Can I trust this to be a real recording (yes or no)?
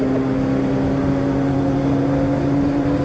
yes